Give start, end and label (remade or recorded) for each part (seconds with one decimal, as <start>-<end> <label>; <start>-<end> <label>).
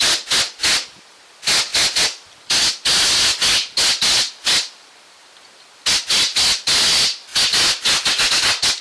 0.0-8.8 recorded